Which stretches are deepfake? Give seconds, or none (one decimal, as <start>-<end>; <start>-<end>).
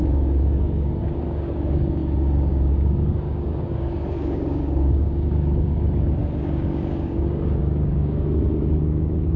0.0-9.4